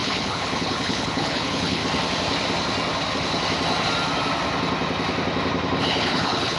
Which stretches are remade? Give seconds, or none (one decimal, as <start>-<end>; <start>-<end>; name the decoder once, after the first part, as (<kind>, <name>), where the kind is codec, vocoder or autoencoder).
0.0-1.8 (codec, HILCodec); 5.8-6.6